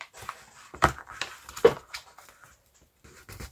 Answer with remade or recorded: remade